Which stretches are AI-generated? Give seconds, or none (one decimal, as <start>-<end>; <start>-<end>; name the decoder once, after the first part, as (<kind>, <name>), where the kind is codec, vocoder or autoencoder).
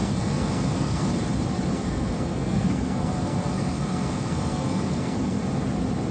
0.0-1.1 (codec, SNAC); 1.7-5.4